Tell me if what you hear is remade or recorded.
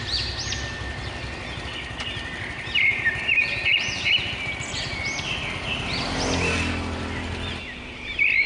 recorded